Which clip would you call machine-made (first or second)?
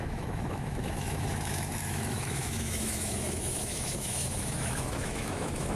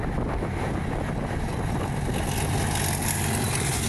first